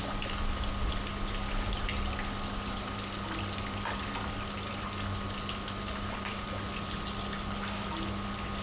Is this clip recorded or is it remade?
recorded